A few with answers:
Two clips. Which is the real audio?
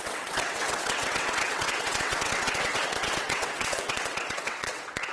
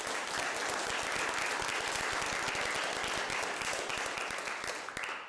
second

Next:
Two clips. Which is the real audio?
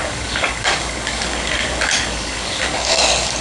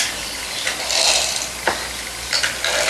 second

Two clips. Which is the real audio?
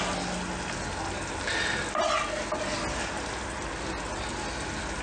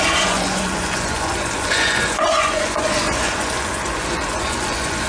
first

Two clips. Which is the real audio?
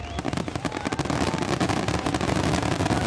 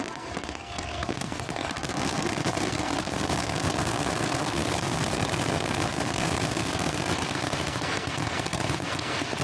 first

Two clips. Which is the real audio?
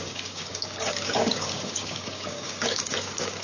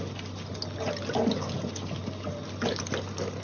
second